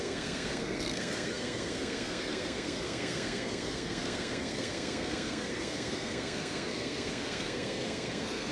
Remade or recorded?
remade